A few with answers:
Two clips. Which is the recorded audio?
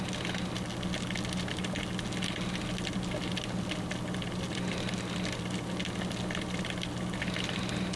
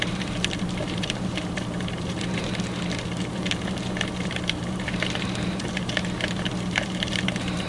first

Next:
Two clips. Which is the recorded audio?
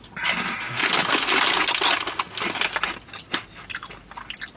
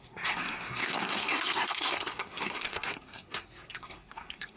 first